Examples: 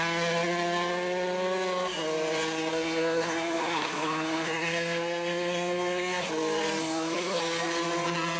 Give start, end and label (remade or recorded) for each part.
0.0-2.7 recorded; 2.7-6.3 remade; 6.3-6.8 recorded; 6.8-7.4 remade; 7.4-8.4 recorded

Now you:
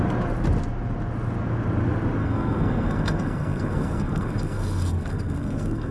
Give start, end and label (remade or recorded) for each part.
0.0-2.2 recorded; 2.2-5.9 remade

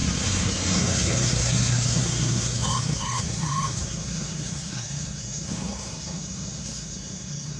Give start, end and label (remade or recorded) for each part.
0.0-7.6 remade

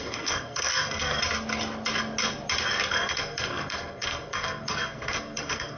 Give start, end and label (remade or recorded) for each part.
0.0-1.2 remade; 1.2-2.9 recorded; 2.9-5.8 remade

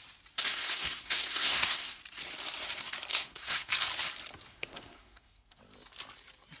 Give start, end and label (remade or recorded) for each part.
0.0-0.5 recorded; 0.5-2.0 remade; 2.0-3.1 recorded; 3.1-3.7 remade; 3.7-4.5 recorded; 4.5-5.6 remade; 5.6-6.6 recorded

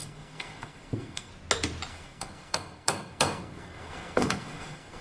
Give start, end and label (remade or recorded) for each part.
0.0-1.3 remade; 1.3-1.9 recorded; 1.9-5.0 remade

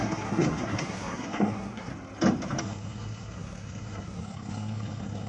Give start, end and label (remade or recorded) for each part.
0.0-1.9 remade; 1.9-2.6 recorded; 2.6-5.3 remade

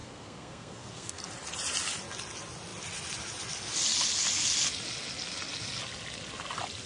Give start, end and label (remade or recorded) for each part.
0.0-1.2 remade; 1.2-6.9 recorded